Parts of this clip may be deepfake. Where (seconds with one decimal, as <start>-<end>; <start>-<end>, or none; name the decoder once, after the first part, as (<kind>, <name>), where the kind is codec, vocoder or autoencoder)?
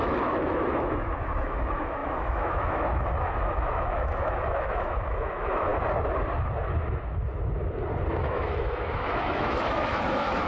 0.0-5.7 (autoencoder, DAC-VAE); 8.2-10.5